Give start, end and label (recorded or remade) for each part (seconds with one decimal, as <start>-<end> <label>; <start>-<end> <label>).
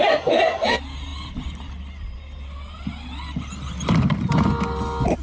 0.0-5.2 recorded